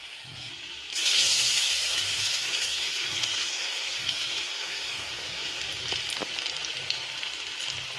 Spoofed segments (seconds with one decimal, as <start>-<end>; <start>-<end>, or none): 0.0-0.5; 0.9-5.6